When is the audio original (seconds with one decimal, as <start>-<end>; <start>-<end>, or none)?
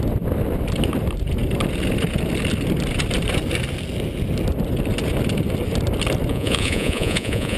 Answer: 0.0-6.3